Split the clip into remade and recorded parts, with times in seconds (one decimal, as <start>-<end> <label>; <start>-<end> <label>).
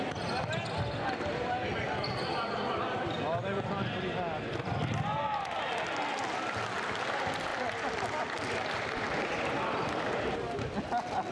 0.0-11.3 recorded